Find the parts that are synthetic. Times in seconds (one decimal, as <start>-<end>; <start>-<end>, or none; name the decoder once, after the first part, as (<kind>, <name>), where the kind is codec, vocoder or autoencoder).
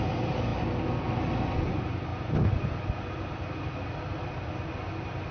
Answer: none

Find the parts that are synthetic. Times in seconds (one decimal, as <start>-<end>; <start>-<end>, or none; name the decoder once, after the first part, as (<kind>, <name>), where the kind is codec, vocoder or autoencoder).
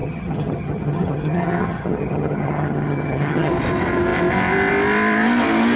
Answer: 0.0-3.5 (vocoder, HiFi-GAN)